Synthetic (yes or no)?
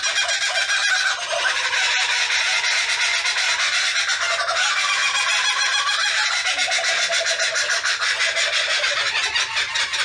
no